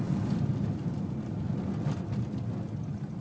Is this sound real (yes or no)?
yes